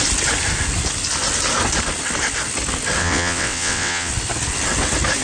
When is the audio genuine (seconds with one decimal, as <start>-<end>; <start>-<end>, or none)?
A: 0.0-3.0; 4.1-5.2